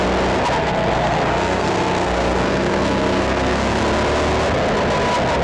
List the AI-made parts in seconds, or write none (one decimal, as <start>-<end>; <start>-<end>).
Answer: 0.6-3.8